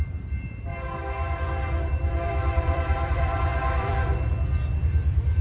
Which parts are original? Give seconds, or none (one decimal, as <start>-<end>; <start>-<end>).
0.7-1.9